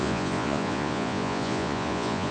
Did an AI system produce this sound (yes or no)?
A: yes